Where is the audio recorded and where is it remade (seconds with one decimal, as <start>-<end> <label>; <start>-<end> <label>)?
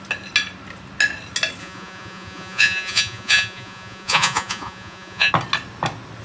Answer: 0.0-1.6 recorded; 1.6-5.3 remade; 5.3-6.2 recorded